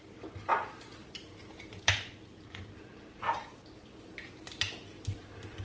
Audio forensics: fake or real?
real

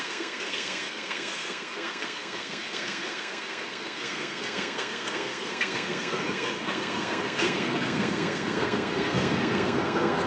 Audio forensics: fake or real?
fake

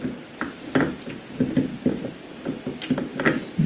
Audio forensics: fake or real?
real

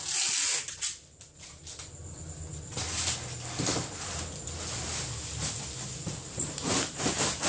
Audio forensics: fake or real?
real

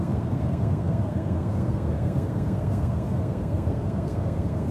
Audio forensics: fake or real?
fake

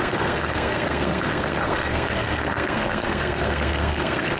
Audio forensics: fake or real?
fake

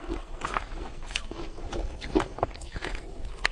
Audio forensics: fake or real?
fake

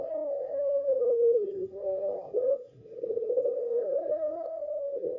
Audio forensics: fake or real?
fake